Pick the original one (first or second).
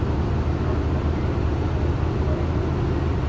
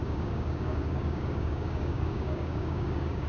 first